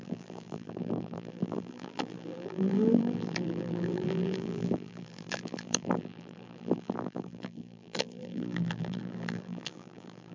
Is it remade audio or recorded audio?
remade